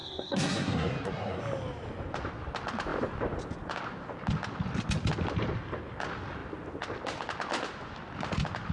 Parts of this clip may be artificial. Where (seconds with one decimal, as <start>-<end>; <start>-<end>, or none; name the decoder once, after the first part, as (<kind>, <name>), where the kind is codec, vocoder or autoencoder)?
0.0-1.4 (codec, SNAC)